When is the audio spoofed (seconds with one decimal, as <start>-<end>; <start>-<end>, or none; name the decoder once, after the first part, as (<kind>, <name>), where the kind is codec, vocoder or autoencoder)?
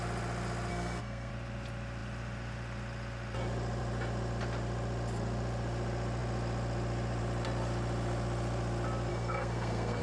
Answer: 0.7-1.3 (codec, SNAC); 9.1-10.0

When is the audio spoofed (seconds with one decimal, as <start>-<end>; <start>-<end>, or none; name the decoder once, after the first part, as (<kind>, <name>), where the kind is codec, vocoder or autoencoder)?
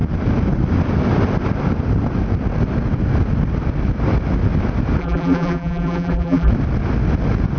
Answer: 5.0-6.5 (vocoder, BigVGAN v2)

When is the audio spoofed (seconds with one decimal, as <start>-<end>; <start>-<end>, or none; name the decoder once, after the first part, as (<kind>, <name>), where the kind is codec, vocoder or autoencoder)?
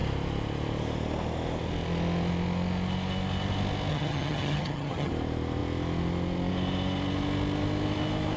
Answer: 3.9-5.1 (vocoder, HiFi-GAN)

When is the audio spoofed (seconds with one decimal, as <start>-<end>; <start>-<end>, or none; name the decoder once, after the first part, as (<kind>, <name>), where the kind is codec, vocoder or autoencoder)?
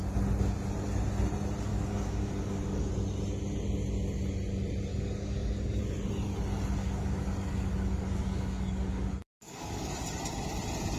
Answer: 1.7-2.9 (codec, DAC); 4.9-5.8; 6.8-9.9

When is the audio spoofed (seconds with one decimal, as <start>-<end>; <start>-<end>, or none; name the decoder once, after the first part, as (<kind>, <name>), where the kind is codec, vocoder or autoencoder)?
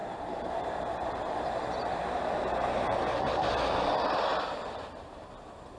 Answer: 0.0-3.5 (vocoder, BigVGAN v2); 4.3-5.8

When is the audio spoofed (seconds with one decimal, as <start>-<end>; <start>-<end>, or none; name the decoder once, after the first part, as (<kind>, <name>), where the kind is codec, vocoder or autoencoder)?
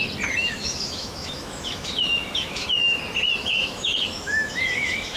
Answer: 0.4-3.0 (autoencoder, DAC-VAE); 3.4-5.2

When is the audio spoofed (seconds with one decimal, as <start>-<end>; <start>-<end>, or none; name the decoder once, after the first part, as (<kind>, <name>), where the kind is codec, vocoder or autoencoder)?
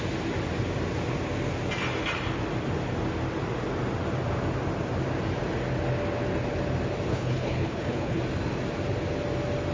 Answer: 7.1-8.2 (codec, HILCodec)